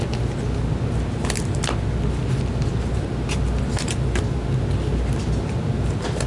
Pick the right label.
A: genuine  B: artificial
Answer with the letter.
A